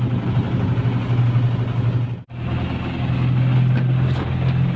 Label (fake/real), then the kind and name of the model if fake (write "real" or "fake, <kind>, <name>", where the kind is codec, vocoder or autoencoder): real